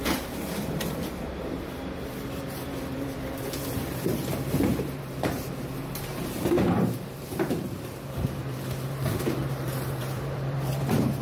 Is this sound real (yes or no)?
no